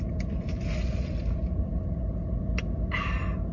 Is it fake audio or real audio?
real